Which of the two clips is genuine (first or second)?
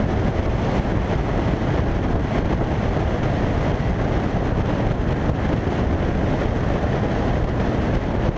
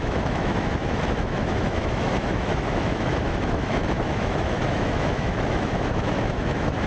first